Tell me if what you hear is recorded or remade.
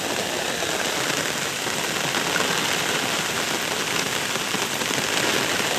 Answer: recorded